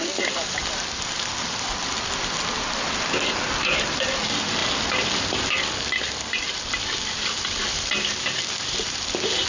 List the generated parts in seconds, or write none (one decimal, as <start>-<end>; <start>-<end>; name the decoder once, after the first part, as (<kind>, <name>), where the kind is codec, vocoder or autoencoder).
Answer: 0.0-0.6 (vocoder, BigVGAN v2); 1.3-9.5